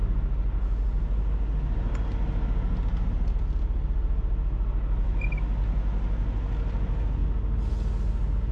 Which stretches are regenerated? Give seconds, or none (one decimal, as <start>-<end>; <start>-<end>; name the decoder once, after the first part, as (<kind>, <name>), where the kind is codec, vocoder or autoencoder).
none